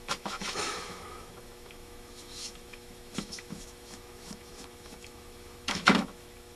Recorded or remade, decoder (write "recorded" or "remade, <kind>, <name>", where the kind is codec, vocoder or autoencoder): remade, autoencoder, DAC-VAE